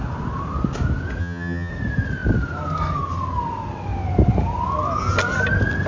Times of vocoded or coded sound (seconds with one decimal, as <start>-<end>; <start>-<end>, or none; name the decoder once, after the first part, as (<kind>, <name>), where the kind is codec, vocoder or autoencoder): 1.2-1.7 (vocoder, HiFi-GAN)